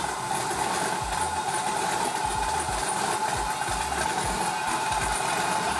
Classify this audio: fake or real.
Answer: real